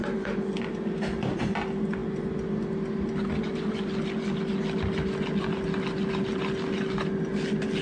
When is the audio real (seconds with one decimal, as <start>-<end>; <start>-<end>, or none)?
0.0-7.8